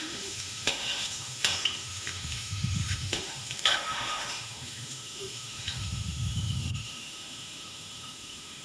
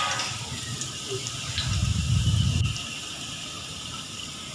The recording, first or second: second